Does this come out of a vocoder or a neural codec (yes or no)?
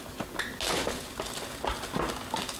no